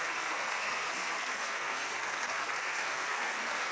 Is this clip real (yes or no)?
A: no